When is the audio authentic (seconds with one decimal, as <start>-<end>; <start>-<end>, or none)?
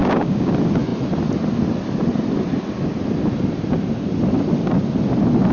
0.5-5.5